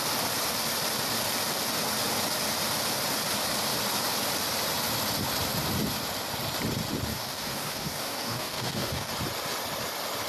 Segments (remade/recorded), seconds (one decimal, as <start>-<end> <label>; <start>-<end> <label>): 0.0-7.1 recorded; 7.1-9.1 remade; 9.1-10.3 recorded